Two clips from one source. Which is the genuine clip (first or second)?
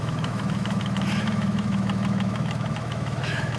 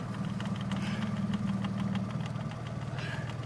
second